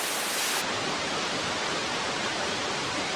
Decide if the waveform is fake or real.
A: real